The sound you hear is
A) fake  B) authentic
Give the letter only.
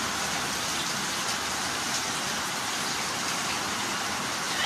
B